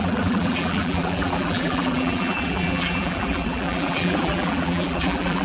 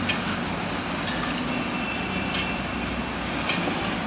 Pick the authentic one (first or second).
second